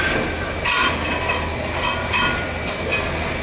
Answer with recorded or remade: recorded